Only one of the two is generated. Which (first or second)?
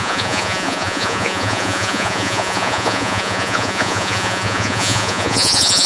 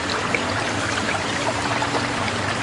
first